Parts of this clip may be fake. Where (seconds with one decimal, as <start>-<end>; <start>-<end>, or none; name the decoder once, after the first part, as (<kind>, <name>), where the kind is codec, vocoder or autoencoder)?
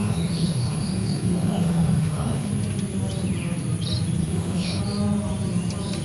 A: 0.0-2.5 (autoencoder, DAC-VAE); 4.2-4.8